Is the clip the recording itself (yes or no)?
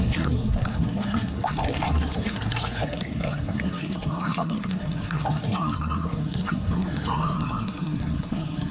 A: no